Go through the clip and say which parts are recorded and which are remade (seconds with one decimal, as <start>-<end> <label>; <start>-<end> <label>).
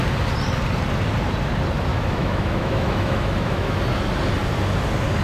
0.0-1.9 recorded; 1.9-3.8 remade; 3.8-5.2 recorded